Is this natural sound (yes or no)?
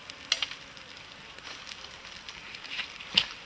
yes